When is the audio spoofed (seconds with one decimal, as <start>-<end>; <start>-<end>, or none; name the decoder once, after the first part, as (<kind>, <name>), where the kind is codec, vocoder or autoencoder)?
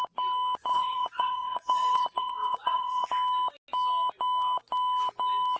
0.7-3.1 (vocoder, WaveNeXt)